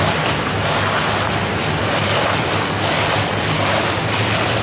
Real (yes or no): yes